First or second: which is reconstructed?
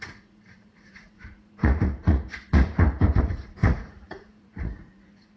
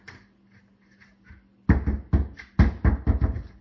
first